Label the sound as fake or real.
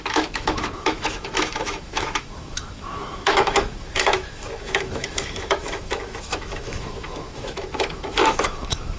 fake